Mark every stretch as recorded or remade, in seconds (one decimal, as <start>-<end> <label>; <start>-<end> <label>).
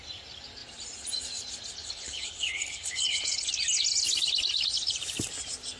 0.0-1.8 recorded; 1.8-3.5 remade; 3.5-5.8 recorded